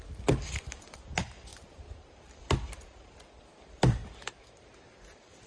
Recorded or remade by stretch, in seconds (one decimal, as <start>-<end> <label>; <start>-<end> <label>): 0.0-5.5 recorded